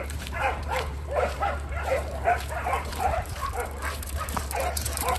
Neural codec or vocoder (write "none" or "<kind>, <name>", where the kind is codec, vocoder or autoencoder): vocoder, BigVGAN v2